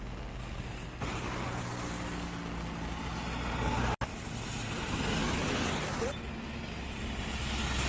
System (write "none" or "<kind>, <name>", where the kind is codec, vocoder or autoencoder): none